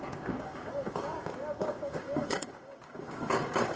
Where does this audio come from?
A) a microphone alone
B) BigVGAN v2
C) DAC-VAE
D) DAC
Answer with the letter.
D